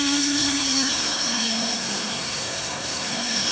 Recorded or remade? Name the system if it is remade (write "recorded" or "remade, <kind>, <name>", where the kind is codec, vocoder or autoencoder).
remade, codec, SNAC